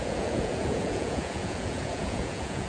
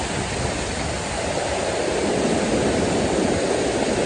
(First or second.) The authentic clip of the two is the second